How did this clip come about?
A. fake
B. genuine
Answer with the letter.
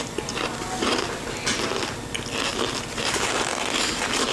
B